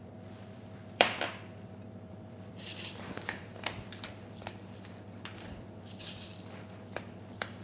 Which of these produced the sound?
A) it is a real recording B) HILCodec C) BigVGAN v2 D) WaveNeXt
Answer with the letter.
C